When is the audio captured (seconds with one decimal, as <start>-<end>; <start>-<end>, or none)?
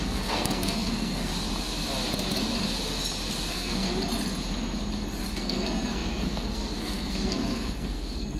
1.3-3.5; 3.9-5.3